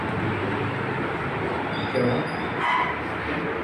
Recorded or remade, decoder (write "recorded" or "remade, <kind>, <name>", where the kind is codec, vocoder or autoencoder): recorded